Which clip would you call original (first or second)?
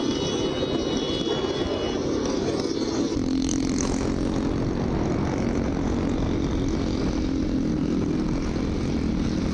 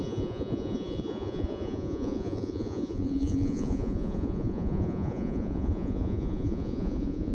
first